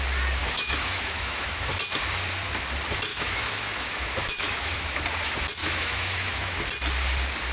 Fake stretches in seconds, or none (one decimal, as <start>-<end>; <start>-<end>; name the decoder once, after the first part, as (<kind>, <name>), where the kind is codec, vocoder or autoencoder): 0.4-1.7 (autoencoder, DAC-VAE); 3.1-5.0; 5.6-6.6